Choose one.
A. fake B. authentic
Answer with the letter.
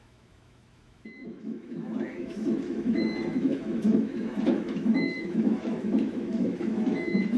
A